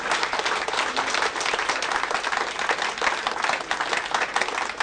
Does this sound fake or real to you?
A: real